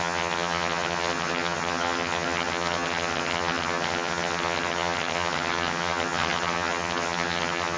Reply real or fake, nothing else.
fake